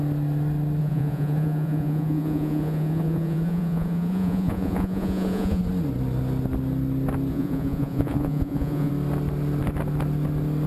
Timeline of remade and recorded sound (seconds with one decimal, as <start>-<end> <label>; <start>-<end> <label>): 0.0-0.8 recorded; 0.8-5.6 remade; 5.6-7.3 recorded; 7.3-8.9 remade; 8.9-10.7 recorded